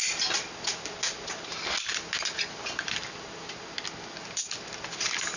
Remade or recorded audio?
recorded